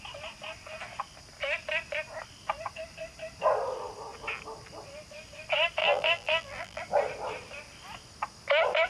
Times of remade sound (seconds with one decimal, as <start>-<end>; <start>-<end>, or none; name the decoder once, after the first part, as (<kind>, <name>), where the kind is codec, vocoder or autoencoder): 5.8-6.8 (vocoder, BigVGAN v2)